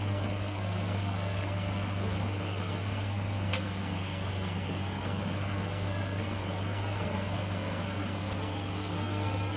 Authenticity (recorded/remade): remade